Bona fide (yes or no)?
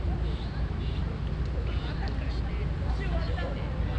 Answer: yes